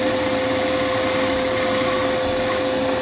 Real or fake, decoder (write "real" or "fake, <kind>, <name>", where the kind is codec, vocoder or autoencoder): real